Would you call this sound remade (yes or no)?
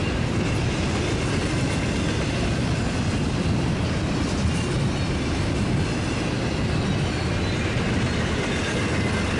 no